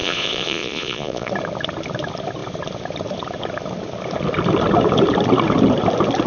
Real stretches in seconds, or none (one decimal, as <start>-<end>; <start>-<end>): 1.3-6.3